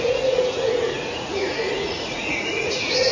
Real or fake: fake